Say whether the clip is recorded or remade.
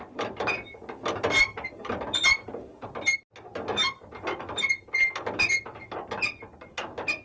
recorded